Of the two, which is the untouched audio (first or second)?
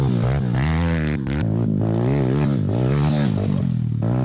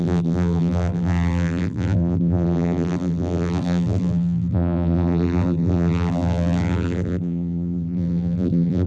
first